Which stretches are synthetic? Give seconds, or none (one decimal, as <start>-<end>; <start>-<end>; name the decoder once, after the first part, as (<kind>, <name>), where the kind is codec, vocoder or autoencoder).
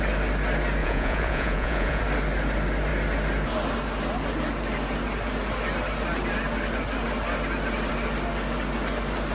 0.8-2.0 (vocoder, Vocos)